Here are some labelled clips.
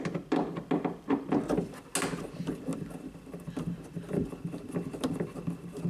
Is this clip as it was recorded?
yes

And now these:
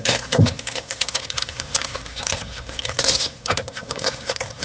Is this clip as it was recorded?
no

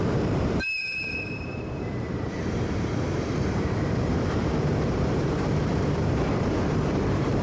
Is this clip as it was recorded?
no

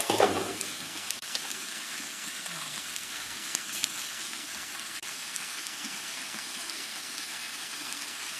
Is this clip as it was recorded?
no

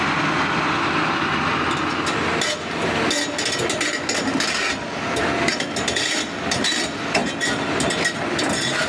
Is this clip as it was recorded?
yes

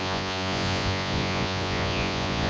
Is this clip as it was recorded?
no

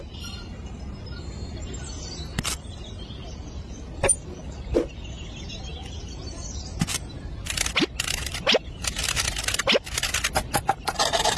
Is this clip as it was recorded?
yes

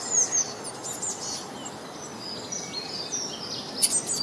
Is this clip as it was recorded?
yes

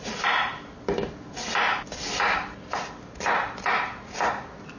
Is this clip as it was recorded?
yes